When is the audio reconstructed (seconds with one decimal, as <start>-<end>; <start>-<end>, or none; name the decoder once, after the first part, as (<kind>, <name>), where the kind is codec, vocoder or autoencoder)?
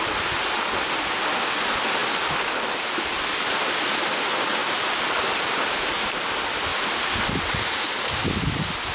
4.6-6.2 (vocoder, BigVGAN v2)